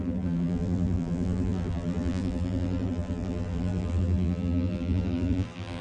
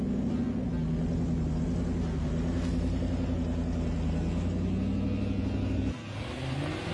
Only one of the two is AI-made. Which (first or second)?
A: first